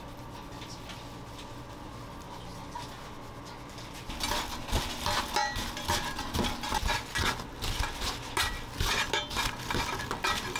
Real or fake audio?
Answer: real